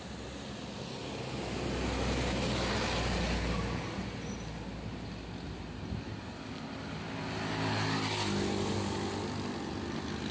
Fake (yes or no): no